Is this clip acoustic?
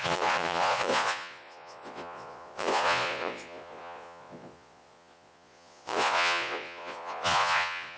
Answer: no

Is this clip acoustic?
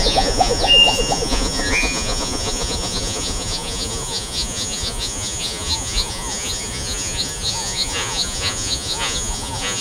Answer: no